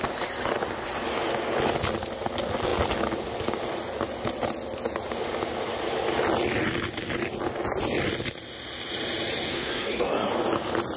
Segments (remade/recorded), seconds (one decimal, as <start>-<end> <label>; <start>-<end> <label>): 0.0-9.5 recorded; 9.5-10.3 remade; 10.3-11.0 recorded

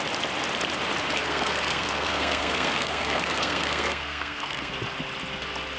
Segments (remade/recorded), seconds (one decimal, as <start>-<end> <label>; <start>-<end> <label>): 0.0-1.2 recorded; 1.2-4.7 remade; 4.7-5.8 recorded

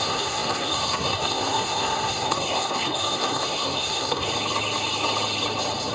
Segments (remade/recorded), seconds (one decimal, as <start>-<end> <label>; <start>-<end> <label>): 0.0-4.3 remade; 4.3-5.9 recorded

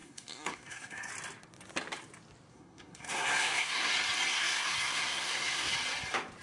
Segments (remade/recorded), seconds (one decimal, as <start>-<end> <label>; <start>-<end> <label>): 0.0-1.1 remade; 1.1-2.5 recorded; 2.5-3.9 remade; 3.9-4.3 recorded; 4.3-5.7 remade; 5.7-6.4 recorded

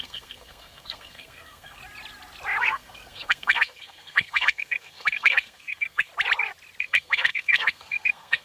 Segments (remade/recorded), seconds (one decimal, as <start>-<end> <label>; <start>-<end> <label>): 0.0-1.8 remade; 1.8-2.6 recorded; 2.6-6.1 remade; 6.1-6.8 recorded; 6.8-8.4 remade

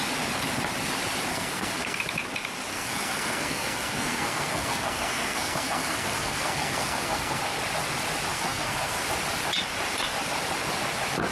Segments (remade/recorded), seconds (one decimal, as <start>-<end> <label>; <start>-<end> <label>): 0.0-1.3 recorded; 1.3-2.0 remade; 2.0-2.7 recorded; 2.7-7.4 remade; 7.4-8.3 recorded; 8.3-9.0 remade; 9.0-11.3 recorded